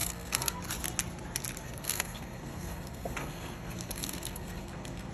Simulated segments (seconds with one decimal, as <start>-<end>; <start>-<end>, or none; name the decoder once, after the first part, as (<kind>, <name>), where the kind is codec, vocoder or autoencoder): 0.0-0.6 (codec, SNAC); 1.6-5.1